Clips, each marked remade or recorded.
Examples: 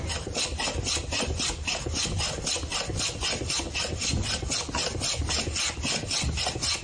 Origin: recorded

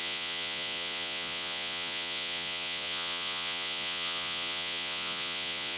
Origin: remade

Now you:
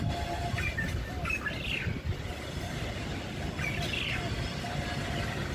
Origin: recorded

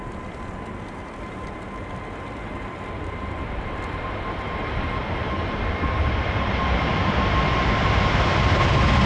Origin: recorded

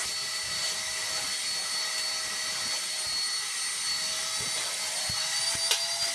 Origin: recorded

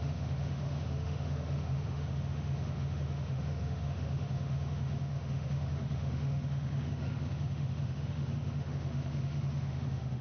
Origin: remade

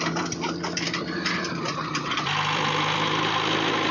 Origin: remade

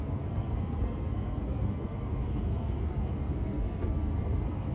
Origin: remade